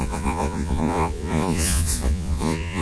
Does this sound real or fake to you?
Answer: fake